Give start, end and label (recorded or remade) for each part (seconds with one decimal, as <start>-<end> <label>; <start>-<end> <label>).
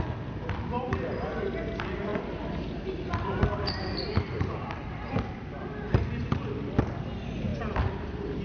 0.0-2.1 recorded; 2.1-3.3 remade; 3.3-4.3 recorded; 4.3-5.2 remade; 5.2-7.5 recorded; 7.5-8.4 remade